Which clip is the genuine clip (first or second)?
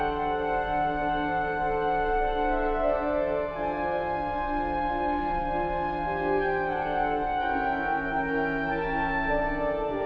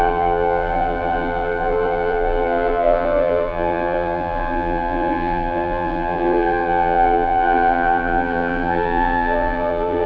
first